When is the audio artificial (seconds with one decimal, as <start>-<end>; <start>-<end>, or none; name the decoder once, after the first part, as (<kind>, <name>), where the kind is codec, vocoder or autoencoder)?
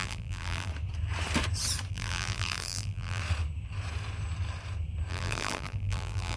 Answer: 0.0-0.7 (vocoder, BigVGAN v2); 1.9-3.2; 5.1-6.4